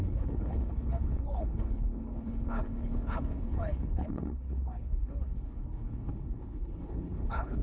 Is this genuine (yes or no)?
no